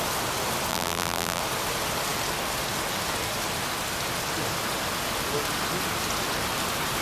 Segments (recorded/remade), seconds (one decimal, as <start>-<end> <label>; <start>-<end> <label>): 0.0-0.7 recorded; 0.7-1.4 remade; 1.4-7.0 recorded